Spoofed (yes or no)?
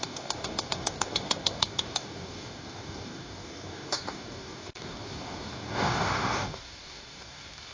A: yes